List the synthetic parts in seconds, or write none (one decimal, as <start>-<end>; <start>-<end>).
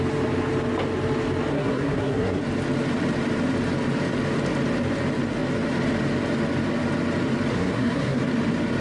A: 1.5-2.4; 7.5-8.2